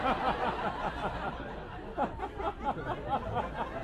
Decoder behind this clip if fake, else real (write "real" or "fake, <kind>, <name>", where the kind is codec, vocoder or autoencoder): real